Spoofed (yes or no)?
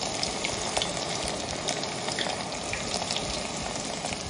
no